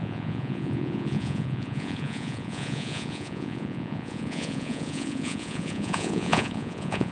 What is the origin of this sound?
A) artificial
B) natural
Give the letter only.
A